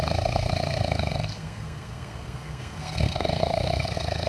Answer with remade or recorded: remade